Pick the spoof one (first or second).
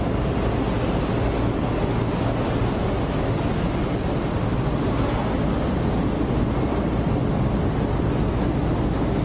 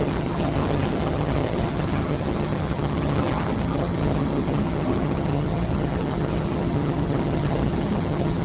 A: second